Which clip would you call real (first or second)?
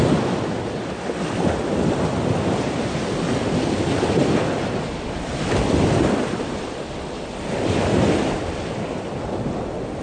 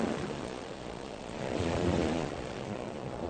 first